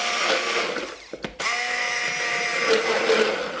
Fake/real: real